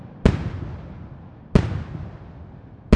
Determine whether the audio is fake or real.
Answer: real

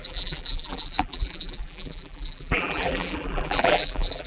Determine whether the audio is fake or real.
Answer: fake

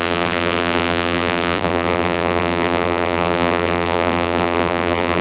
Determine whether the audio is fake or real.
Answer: fake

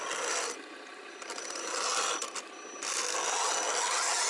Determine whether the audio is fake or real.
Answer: real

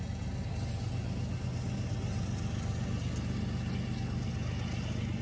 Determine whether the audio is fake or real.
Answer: real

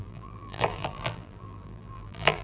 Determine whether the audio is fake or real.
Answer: fake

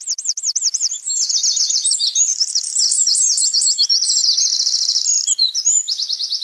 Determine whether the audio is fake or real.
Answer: fake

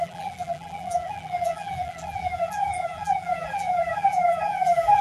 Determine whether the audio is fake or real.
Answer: fake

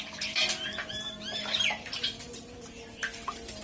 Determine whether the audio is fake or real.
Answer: real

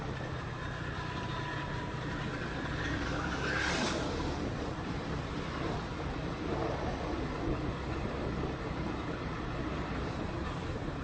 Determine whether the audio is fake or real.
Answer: fake